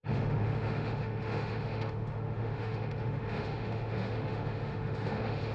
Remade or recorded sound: remade